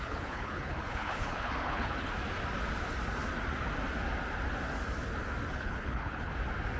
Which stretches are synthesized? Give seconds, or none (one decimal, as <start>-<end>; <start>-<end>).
0.0-2.1; 5.5-6.3